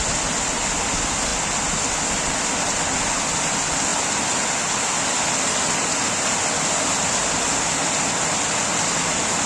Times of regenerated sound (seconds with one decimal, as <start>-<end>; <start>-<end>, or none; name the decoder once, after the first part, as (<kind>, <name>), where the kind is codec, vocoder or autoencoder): none

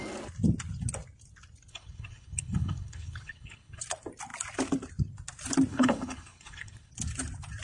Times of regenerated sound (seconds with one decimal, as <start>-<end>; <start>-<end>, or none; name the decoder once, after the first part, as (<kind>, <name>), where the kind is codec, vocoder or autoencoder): 1.7-3.8 (codec, HILCodec); 5.7-6.9

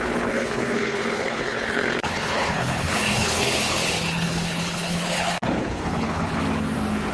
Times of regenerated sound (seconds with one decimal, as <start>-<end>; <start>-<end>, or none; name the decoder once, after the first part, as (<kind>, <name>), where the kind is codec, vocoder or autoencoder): 0.0-6.4 (codec, HILCodec)

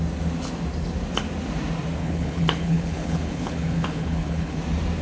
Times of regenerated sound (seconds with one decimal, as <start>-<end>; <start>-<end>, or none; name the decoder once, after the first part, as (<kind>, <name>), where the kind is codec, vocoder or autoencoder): 2.0-4.6 (codec, HILCodec)

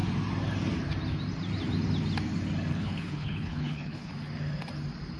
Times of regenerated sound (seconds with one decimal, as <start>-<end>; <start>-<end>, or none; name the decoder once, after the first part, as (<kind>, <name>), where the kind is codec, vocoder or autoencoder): 2.7-4.1 (codec, HILCodec)